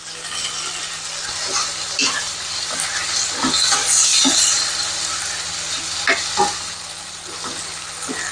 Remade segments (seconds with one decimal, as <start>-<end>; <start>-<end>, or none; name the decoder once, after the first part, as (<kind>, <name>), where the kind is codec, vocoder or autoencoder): none